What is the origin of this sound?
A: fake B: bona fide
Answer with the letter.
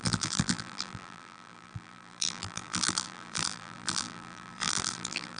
A